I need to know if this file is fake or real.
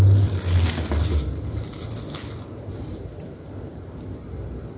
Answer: real